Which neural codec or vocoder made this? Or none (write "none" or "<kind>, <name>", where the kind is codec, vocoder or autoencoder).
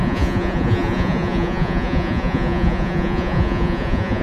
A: vocoder, Vocos